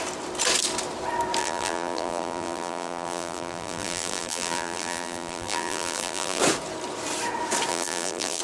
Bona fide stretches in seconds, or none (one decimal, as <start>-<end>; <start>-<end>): 0.0-1.4; 6.4-7.7